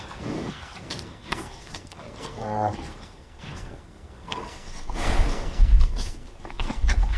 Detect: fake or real fake